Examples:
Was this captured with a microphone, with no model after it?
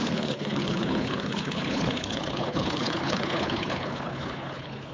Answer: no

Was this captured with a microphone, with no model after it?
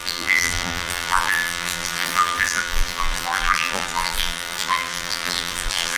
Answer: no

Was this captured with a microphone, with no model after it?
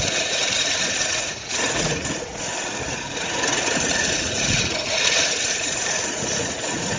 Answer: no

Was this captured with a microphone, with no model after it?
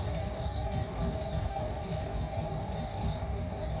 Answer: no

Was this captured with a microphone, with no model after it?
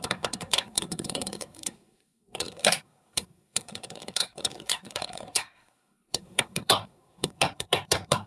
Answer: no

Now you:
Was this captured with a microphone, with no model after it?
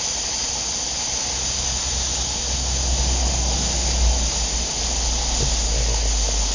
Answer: yes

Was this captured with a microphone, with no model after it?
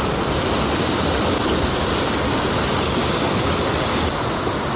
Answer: yes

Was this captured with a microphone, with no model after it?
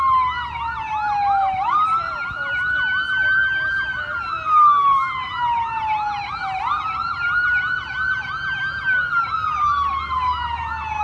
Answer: yes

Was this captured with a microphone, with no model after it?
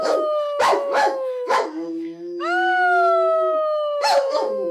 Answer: no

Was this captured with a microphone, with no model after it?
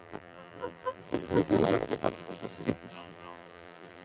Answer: no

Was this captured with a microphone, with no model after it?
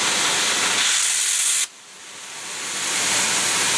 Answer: yes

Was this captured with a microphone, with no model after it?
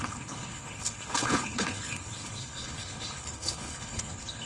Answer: no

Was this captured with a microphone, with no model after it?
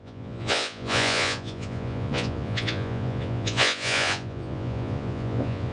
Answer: no